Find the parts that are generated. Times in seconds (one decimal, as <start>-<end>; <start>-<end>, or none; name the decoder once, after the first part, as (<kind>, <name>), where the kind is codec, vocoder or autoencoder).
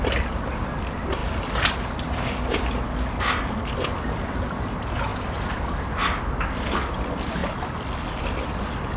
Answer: none